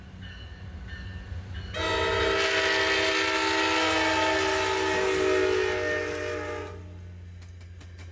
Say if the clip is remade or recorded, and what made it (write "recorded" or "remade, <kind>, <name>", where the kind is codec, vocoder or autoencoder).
recorded